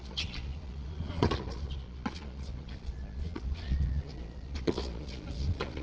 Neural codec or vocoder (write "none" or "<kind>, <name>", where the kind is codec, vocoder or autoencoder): vocoder, Vocos